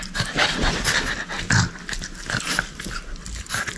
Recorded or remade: recorded